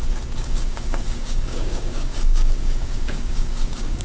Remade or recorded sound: remade